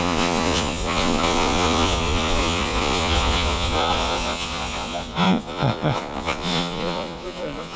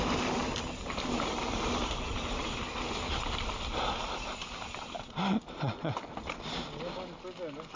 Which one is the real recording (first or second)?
second